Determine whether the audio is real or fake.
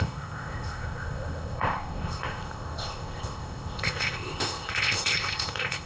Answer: fake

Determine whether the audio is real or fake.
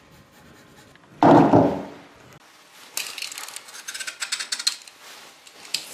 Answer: real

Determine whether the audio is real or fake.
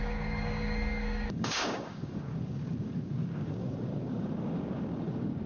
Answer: fake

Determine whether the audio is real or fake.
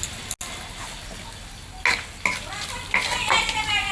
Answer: real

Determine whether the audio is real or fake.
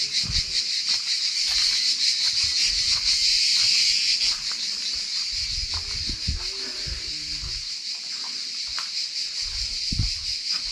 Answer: real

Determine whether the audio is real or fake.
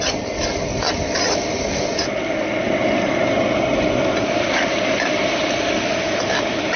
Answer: real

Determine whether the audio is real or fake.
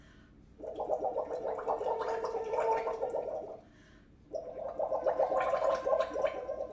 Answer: real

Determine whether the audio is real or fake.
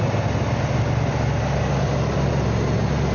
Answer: real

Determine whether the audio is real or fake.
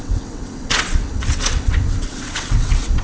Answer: fake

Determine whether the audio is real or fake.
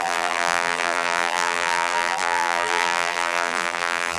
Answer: fake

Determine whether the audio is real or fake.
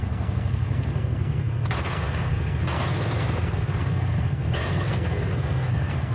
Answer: fake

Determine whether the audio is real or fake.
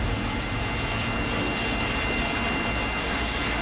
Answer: real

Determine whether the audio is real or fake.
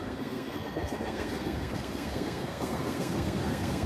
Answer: fake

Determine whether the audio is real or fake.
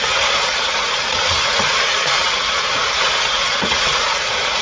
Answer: fake